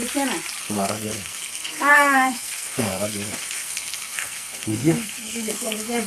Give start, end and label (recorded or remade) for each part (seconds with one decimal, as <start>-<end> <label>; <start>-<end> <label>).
0.0-0.6 recorded; 0.6-6.1 remade